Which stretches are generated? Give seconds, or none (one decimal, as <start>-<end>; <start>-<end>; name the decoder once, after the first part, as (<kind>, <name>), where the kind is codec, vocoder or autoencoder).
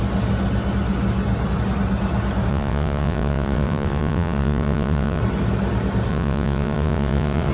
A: 2.5-5.2 (vocoder, WaveNeXt); 6.1-7.5